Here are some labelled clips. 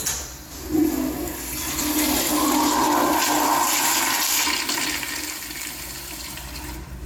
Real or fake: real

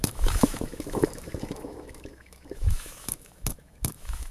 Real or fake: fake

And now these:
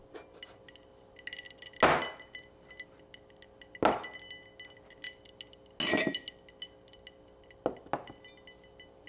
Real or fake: real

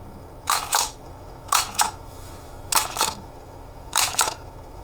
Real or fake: fake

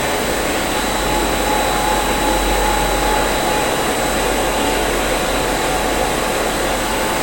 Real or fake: real